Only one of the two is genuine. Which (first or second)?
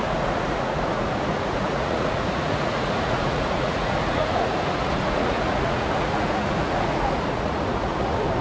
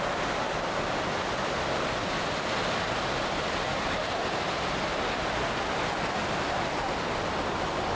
second